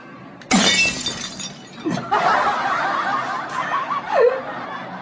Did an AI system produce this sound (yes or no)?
no